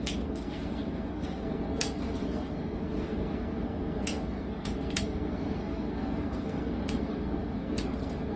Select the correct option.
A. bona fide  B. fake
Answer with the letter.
B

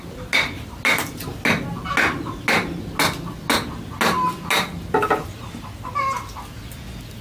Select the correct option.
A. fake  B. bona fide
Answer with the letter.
B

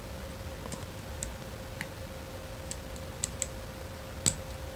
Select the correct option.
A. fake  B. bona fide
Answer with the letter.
B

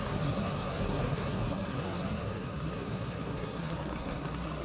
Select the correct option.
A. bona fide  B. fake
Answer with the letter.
B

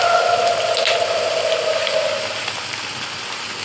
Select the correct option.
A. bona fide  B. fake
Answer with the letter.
A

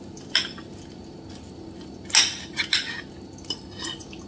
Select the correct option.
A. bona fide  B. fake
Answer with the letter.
A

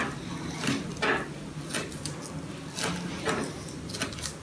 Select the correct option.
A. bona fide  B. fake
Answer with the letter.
A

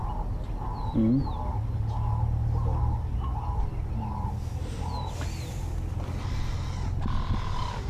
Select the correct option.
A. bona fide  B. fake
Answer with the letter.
A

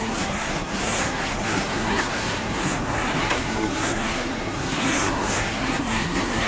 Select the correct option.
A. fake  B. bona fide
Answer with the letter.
A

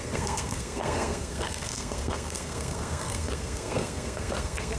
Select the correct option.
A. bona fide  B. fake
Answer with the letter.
B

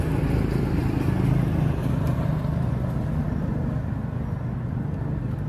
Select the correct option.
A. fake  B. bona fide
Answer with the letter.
B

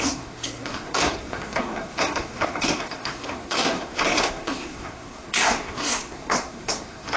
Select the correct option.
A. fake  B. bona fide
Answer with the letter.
A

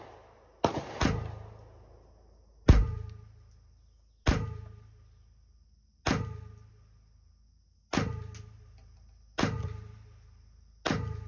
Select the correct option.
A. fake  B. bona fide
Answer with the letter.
B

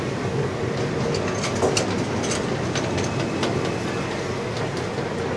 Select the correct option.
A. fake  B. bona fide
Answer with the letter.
B